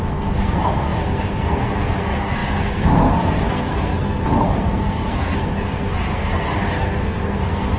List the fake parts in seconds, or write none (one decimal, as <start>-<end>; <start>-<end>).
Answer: 0.0-7.8